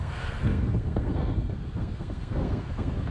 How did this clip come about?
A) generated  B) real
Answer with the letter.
A